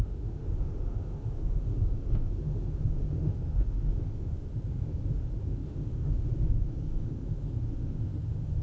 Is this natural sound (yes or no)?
no